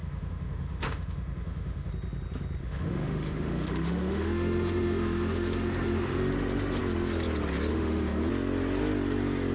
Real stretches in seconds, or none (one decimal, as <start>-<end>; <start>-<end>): 1.9-2.6; 6.8-7.7; 8.3-9.5